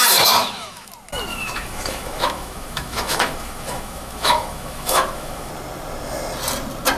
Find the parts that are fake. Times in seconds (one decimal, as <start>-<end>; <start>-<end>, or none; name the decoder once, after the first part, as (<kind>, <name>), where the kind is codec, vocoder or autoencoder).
0.4-0.9 (autoencoder, DAC-VAE); 1.3-5.5